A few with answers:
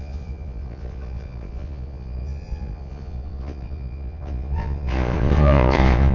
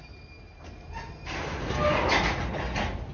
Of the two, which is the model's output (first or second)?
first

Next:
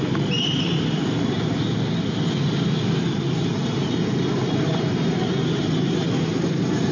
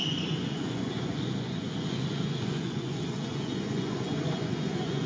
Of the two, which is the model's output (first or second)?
second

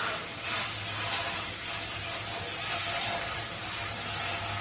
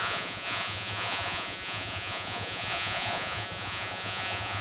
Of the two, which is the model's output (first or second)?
second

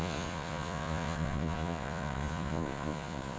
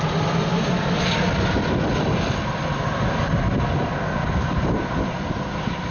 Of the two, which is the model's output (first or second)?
first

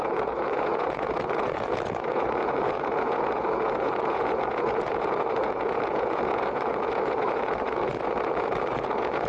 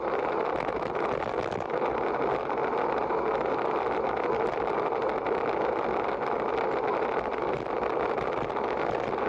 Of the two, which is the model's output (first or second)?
first